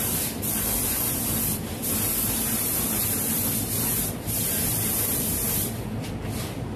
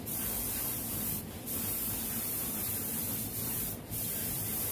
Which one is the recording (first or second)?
first